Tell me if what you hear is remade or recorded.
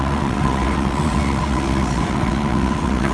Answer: remade